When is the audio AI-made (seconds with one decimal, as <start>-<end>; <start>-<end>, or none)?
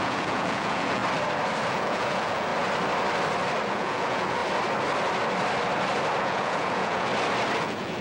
0.0-1.0; 1.7-2.5; 3.7-4.4; 6.2-7.1; 7.6-8.0